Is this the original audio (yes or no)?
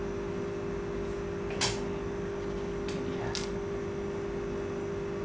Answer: yes